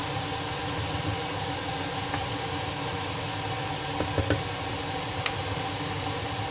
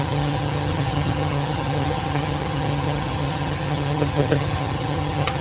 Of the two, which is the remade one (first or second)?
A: second